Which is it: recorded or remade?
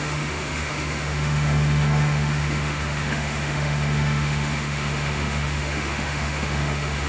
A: remade